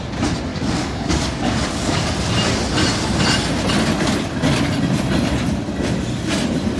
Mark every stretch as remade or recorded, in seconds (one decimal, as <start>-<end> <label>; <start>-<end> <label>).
0.0-0.5 recorded; 0.5-2.1 remade; 2.1-6.8 recorded